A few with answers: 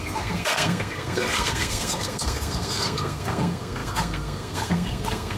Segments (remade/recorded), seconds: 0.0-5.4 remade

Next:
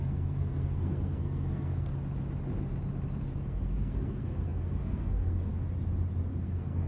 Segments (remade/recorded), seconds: 0.0-1.9 remade; 1.9-3.3 recorded; 3.3-5.5 remade; 5.5-6.3 recorded; 6.3-6.9 remade

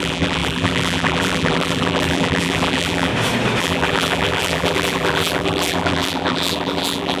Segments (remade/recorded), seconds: 0.0-3.1 remade; 3.1-3.6 recorded; 3.6-7.2 remade